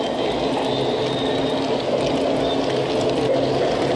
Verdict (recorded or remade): recorded